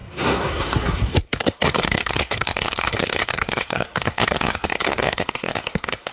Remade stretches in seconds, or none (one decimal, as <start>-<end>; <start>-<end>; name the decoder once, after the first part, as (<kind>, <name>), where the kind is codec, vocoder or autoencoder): 0.0-6.1 (codec, SNAC)